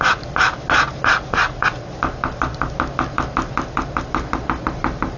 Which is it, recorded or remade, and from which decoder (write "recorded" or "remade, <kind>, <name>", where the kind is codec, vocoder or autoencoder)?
recorded